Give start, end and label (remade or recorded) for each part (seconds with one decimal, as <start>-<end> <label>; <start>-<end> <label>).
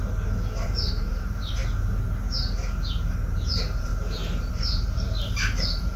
0.0-0.6 recorded; 0.6-1.6 remade; 1.6-2.9 recorded; 2.9-3.9 remade; 3.9-4.5 recorded; 4.5-6.0 remade